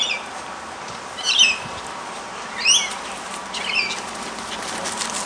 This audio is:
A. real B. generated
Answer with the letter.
A